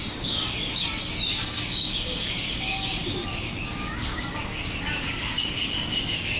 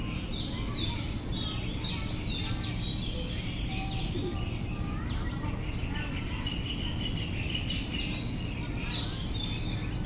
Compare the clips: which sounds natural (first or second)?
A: second